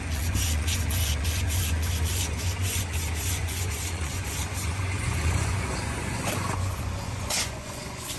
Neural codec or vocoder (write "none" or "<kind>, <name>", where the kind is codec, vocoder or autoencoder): vocoder, Vocos